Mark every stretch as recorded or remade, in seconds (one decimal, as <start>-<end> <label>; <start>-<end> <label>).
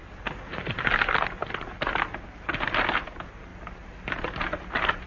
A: 0.0-5.1 recorded